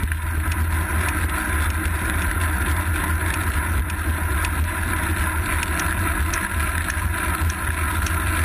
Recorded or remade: recorded